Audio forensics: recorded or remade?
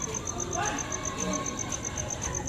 recorded